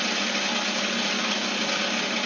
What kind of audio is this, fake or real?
real